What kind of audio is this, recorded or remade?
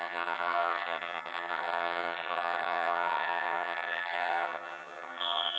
remade